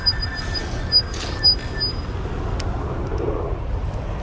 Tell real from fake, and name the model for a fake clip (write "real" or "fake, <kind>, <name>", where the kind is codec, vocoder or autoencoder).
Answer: real